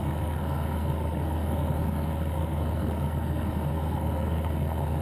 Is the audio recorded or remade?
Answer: remade